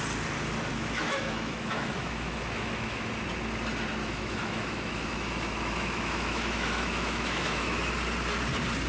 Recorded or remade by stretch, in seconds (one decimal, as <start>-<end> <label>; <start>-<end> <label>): 0.0-0.7 recorded; 0.7-3.1 remade; 3.1-4.0 recorded; 4.0-7.9 remade; 7.9-8.9 recorded